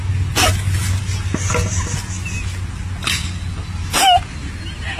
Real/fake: real